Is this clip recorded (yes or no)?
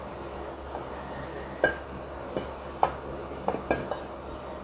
yes